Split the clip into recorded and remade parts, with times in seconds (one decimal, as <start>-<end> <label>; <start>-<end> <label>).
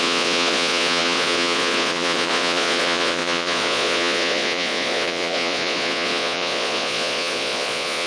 0.0-8.1 remade